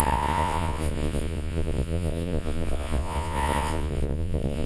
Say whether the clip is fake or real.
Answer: fake